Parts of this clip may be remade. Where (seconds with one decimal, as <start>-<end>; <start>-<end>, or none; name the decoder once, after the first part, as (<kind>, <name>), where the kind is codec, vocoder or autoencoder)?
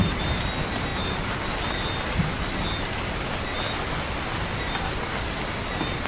none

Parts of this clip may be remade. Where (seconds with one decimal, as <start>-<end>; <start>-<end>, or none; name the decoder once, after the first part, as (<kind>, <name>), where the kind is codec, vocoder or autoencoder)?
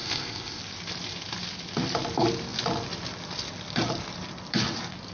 0.0-0.6 (codec, ZipCodec)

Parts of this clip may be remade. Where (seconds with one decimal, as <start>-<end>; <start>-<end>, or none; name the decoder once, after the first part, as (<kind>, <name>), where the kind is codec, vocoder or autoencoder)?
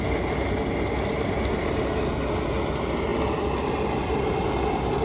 none